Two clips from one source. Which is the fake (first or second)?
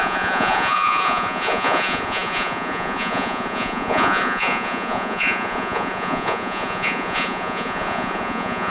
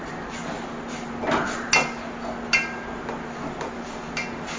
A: first